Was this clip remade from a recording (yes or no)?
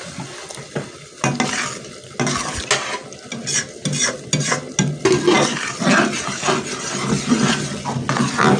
no